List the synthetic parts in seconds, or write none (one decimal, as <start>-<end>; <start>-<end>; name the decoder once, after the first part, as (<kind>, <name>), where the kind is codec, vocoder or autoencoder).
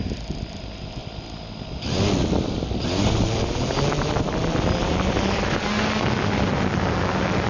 none